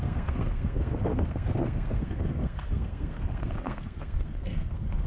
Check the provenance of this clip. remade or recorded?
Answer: remade